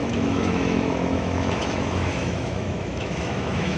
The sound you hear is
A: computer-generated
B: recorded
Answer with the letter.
A